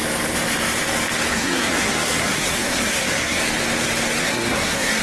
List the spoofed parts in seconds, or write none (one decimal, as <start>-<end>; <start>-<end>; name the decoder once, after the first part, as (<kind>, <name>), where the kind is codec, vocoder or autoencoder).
1.3-3.4 (codec, SNAC); 4.2-5.0